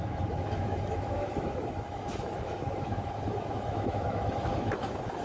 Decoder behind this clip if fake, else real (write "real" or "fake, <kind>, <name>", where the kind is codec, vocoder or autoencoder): fake, autoencoder, DAC-VAE